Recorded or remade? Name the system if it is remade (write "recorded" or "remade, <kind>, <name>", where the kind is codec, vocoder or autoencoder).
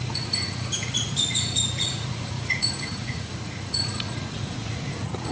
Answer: remade, vocoder, Vocos